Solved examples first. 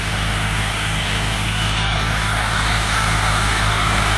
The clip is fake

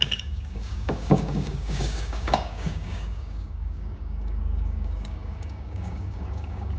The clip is fake